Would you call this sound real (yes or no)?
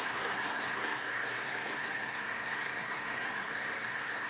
no